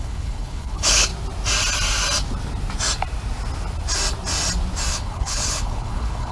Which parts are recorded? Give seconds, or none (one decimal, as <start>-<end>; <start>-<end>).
1.1-4.9